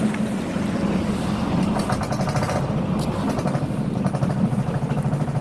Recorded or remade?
recorded